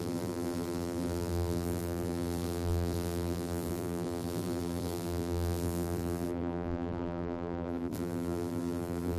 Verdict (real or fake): fake